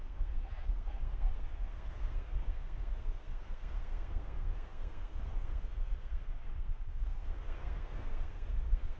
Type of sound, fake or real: fake